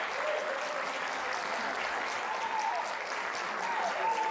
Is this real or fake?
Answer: real